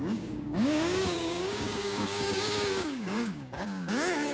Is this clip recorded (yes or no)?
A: no